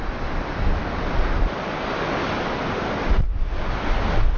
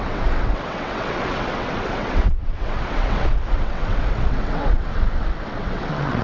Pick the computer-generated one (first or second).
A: second